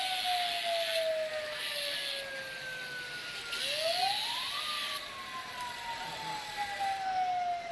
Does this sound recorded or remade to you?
recorded